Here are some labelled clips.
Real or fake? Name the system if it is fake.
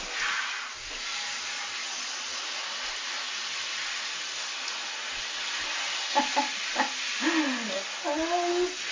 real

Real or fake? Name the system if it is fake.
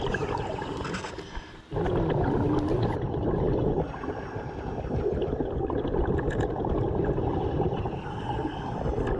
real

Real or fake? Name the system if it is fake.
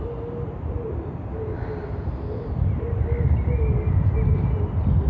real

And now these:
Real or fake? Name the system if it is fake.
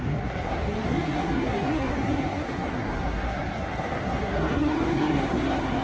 fake, codec, SNAC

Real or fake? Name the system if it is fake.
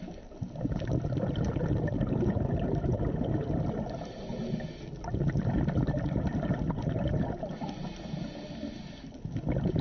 real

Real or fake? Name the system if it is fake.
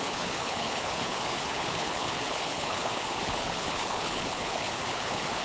fake, codec, HILCodec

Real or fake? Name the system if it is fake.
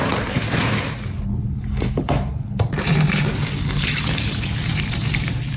fake, vocoder, BigVGAN v2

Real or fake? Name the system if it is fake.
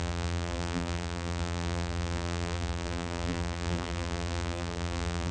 fake, vocoder, BigVGAN v2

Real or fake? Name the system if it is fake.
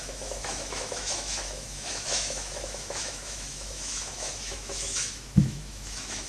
fake, autoencoder, DAC-VAE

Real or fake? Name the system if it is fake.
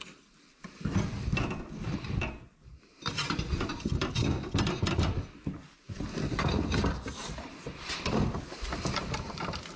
fake, vocoder, BigVGAN v2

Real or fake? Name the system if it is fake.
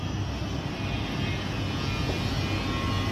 real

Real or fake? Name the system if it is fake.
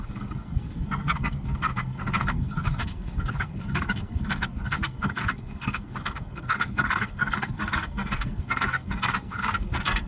fake, codec, SNAC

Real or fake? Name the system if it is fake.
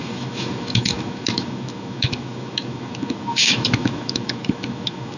fake, autoencoder, DAC-VAE